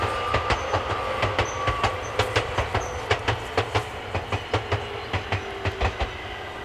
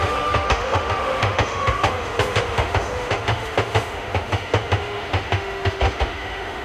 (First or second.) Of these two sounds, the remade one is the second